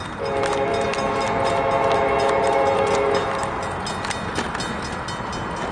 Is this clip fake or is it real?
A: real